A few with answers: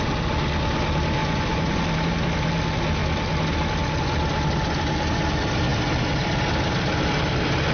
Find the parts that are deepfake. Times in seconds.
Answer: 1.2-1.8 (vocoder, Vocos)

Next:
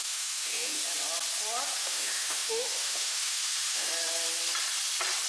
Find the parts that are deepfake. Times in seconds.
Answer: 0.0-0.8 (autoencoder, DAC-VAE); 1.8-3.9

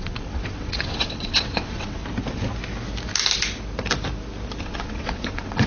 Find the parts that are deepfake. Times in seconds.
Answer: 0.0-2.0 (vocoder, WaveNeXt); 4.6-5.7